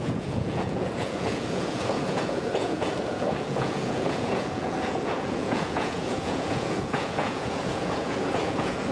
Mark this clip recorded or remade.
remade